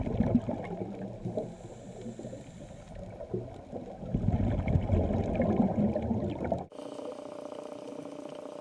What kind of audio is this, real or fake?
real